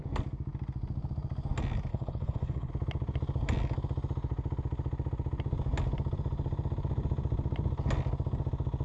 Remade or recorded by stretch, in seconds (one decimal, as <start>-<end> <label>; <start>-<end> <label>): 0.0-1.9 recorded; 1.9-2.7 remade; 2.7-8.8 recorded